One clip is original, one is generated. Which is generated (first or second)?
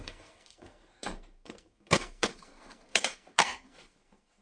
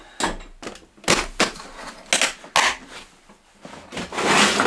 first